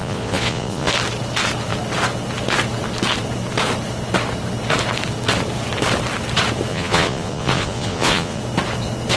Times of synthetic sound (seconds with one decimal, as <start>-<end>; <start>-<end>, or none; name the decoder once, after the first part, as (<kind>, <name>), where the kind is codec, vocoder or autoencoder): 0.0-0.9 (vocoder, Vocos); 6.7-8.4